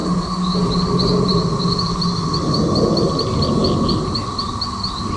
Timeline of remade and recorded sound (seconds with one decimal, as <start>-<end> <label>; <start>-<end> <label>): 0.0-5.2 recorded